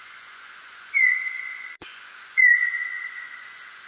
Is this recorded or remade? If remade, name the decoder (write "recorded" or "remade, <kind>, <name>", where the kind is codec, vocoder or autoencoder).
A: remade, vocoder, Vocos